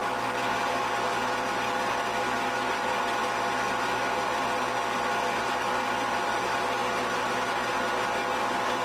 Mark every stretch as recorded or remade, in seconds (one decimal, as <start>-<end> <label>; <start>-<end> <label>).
0.0-8.8 recorded